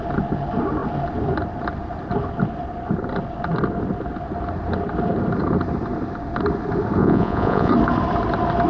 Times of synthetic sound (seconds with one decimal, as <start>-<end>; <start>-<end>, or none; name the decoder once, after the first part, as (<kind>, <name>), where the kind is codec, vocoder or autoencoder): 7.0-7.7 (vocoder, Vocos)